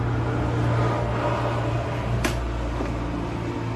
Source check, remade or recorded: recorded